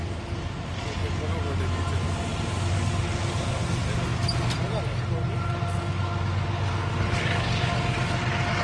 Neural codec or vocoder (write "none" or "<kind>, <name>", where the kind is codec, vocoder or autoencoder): none